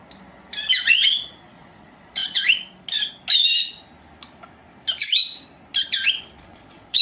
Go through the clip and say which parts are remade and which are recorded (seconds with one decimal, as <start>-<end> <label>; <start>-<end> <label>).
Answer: 0.0-0.8 recorded; 0.8-2.2 remade; 2.2-6.4 recorded; 6.4-7.0 remade